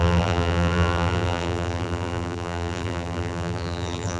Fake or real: fake